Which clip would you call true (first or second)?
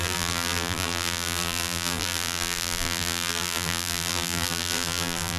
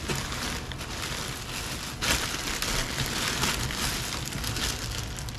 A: second